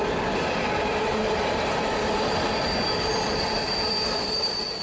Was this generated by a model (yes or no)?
no